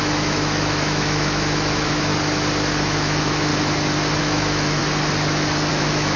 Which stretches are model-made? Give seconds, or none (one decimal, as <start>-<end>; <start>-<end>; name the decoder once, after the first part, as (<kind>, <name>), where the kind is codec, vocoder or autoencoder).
0.0-2.1 (autoencoder, DAC-VAE); 2.8-3.5; 4.2-4.8; 5.7-6.2